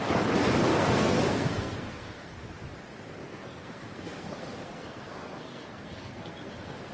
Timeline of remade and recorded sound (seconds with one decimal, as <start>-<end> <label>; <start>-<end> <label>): 0.0-0.7 recorded; 0.7-2.4 remade; 2.4-3.2 recorded; 3.2-6.9 remade